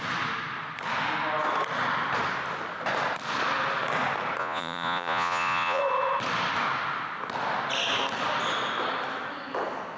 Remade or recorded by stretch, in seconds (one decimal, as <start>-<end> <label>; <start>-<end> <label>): 0.0-4.4 recorded; 4.4-5.8 remade; 5.8-10.0 recorded